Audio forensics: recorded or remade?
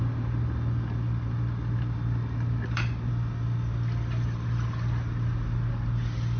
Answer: recorded